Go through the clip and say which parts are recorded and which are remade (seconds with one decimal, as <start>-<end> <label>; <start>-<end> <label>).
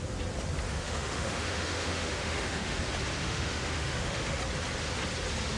0.0-0.7 recorded; 0.7-2.8 remade; 2.8-3.2 recorded; 3.2-4.4 remade; 4.4-5.6 recorded